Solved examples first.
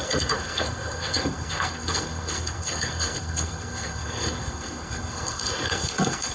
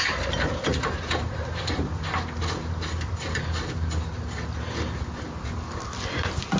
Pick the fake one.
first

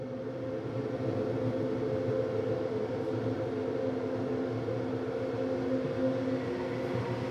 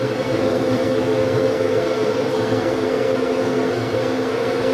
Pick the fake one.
second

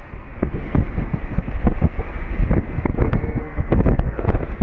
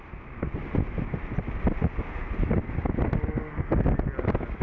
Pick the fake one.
first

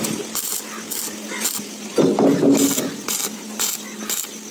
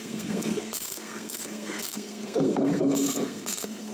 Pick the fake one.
second